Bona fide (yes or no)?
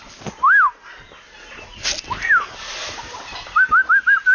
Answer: yes